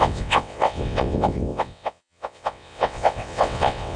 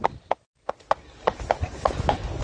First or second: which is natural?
second